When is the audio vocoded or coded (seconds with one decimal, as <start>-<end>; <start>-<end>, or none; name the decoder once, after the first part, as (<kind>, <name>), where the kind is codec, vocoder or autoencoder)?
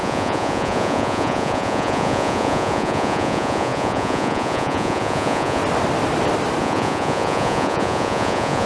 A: 0.0-5.6 (vocoder, Vocos); 6.6-8.7